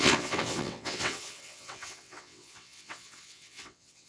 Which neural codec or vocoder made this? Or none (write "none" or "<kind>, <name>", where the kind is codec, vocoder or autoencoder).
vocoder, WaveNeXt